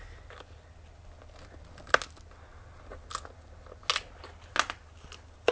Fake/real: real